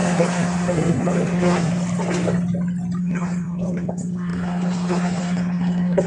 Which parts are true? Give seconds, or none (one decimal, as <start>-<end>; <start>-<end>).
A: 1.7-3.0